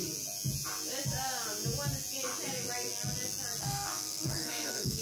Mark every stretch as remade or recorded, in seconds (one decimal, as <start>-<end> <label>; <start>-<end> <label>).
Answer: 0.0-3.6 recorded; 3.6-5.0 remade